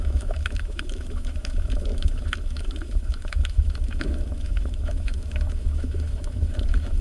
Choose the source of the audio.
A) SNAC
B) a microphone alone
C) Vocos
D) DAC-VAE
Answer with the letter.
D